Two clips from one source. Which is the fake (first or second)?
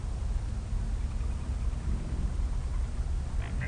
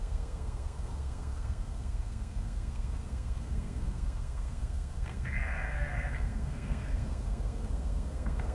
second